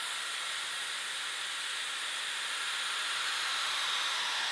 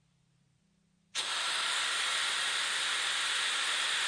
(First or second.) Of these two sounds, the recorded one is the first